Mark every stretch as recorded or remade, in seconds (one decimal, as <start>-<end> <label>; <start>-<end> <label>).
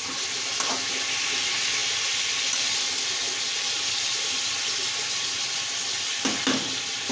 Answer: 0.0-7.1 recorded